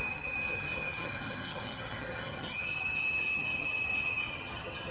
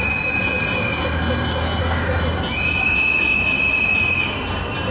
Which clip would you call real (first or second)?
second